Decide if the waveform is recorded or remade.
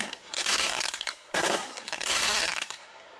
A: remade